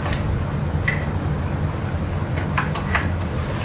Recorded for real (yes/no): yes